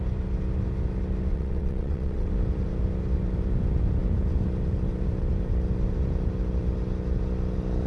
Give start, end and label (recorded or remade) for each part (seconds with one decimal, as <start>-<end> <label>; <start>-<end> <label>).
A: 0.0-1.3 recorded; 1.3-2.3 remade; 2.3-7.9 recorded